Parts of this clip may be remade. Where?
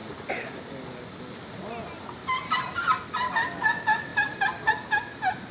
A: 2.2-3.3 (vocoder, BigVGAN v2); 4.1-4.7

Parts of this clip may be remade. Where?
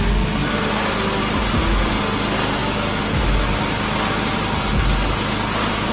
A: 0.4-2.0 (vocoder, BigVGAN v2)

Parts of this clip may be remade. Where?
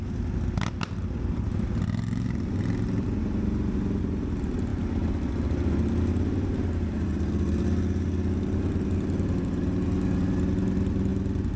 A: none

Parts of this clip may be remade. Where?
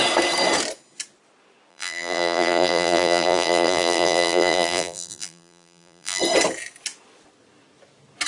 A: 1.7-6.2 (vocoder, BigVGAN v2)